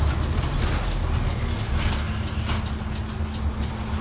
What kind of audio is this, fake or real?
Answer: real